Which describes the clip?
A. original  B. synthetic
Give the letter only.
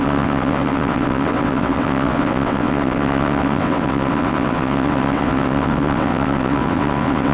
B